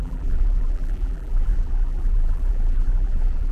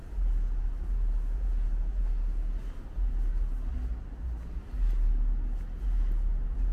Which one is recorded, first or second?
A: second